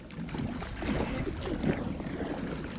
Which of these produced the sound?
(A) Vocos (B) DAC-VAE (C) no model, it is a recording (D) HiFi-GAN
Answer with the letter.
C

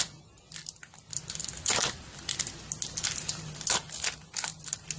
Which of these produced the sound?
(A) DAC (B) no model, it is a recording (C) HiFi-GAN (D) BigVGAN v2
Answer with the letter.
B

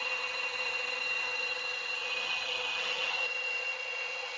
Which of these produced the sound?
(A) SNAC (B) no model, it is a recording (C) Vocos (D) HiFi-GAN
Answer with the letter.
D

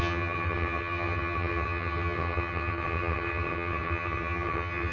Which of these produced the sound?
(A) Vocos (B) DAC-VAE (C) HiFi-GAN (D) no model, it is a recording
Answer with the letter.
C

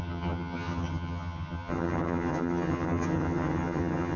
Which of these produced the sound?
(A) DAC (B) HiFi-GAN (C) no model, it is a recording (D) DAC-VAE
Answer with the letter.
B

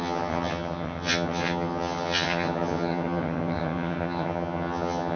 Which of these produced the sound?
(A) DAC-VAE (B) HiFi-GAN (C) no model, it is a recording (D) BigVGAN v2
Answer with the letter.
B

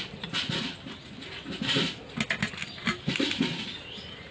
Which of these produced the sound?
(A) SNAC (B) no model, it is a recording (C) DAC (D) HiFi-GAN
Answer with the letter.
B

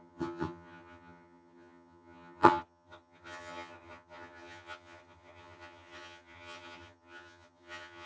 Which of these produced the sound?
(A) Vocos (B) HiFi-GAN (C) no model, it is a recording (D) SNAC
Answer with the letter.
B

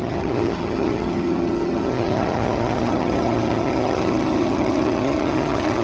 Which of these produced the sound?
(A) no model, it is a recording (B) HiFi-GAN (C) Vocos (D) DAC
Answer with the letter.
B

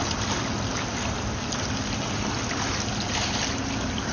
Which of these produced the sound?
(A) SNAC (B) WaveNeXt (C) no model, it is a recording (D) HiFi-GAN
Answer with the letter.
C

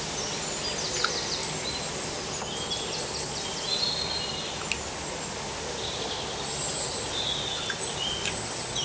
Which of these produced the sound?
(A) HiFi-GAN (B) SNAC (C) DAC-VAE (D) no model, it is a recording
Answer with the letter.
D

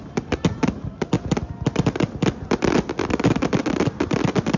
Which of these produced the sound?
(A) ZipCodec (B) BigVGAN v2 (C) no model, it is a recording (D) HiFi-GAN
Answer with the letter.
C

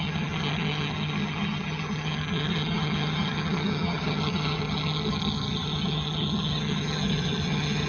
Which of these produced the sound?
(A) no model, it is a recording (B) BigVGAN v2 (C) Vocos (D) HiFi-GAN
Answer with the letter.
D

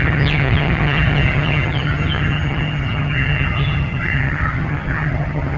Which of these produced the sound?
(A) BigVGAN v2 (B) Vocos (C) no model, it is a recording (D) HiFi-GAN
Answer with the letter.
D